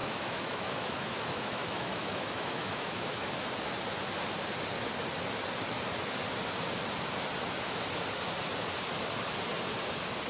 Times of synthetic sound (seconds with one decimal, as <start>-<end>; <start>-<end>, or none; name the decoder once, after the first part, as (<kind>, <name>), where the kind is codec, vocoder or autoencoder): 0.0-3.3 (autoencoder, DAC-VAE)